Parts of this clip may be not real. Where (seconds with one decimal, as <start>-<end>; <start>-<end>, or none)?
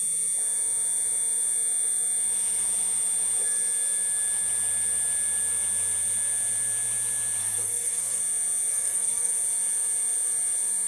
7.4-8.2; 8.7-9.3